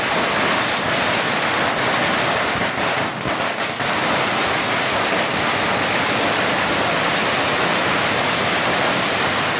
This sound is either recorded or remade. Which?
recorded